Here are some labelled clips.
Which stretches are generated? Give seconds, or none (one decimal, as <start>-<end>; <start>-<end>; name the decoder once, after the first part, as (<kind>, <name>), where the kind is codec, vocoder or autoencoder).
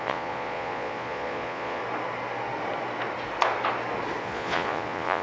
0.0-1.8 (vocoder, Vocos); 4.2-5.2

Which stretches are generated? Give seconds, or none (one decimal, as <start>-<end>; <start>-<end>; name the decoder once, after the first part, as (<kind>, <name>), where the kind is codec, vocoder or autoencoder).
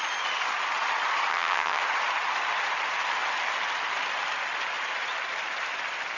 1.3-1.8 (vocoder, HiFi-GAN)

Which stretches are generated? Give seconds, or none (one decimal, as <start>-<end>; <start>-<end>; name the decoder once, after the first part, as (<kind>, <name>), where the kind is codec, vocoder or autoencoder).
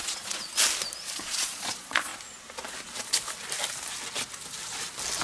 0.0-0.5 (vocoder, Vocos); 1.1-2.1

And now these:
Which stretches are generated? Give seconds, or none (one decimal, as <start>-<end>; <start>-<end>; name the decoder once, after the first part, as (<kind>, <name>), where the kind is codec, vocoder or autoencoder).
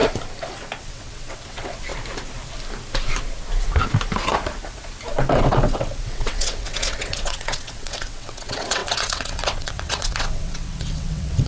0.8-1.9 (vocoder, WaveNeXt); 5.3-11.5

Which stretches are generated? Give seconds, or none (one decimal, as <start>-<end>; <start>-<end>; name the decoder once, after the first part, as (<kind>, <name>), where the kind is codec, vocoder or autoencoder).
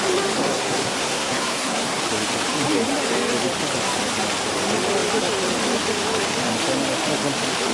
0.4-2.0 (codec, SNAC)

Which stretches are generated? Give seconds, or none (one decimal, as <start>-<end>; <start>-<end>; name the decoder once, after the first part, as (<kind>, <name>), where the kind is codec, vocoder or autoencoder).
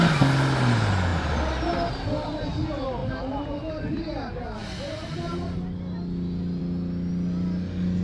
none